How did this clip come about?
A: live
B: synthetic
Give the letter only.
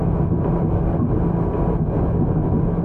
A